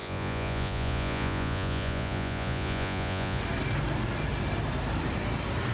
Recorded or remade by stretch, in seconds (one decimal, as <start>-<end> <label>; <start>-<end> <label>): 0.0-3.4 remade; 3.4-5.7 recorded